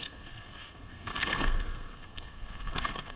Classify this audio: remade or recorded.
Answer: remade